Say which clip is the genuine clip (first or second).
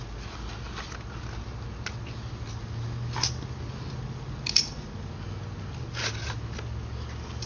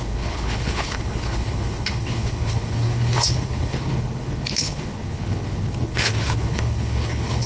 first